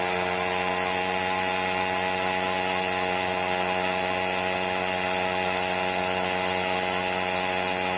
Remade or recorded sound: recorded